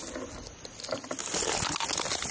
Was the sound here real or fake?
real